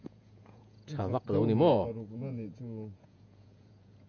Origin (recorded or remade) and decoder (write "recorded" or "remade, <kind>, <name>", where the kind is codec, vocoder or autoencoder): remade, vocoder, Vocos